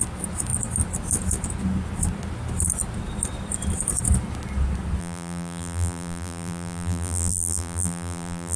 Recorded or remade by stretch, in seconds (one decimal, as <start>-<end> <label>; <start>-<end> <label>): 0.0-5.0 recorded; 5.0-8.6 remade